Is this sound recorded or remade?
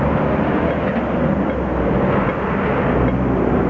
recorded